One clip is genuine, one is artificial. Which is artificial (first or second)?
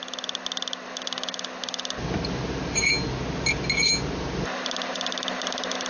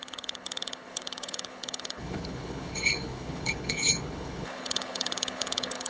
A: second